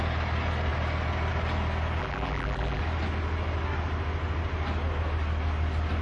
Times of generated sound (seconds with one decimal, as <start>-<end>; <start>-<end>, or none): 2.0-2.8